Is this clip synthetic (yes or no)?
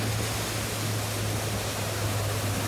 no